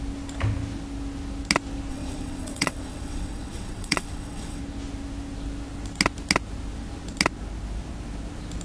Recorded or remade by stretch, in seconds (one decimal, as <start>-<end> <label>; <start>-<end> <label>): 0.0-1.9 recorded; 1.9-4.6 remade; 4.6-8.6 recorded